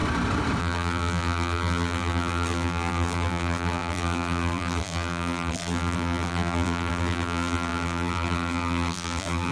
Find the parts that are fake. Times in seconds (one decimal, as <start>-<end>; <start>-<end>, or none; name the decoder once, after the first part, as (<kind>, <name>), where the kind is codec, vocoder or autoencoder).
0.6-9.5 (vocoder, BigVGAN v2)